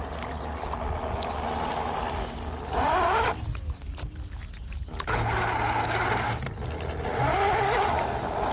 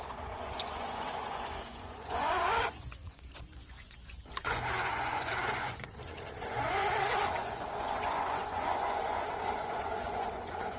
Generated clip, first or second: second